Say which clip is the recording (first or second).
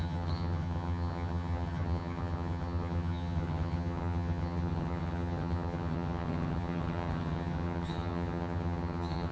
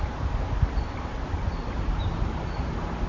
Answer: second